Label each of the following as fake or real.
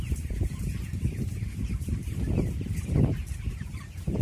fake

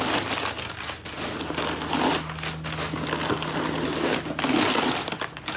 real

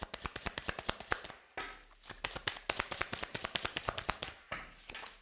real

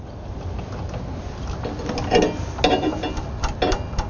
real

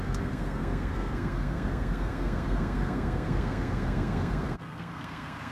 fake